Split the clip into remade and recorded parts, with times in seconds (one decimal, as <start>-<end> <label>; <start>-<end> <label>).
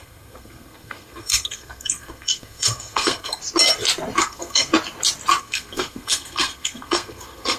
0.0-3.4 remade; 3.4-4.2 recorded; 4.2-4.7 remade; 4.7-5.4 recorded; 5.4-7.6 remade